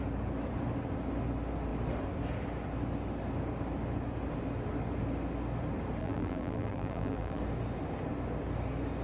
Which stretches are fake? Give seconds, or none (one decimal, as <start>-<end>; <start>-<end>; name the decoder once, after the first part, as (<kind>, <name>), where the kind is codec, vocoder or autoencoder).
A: 6.0-7.4 (vocoder, BigVGAN v2)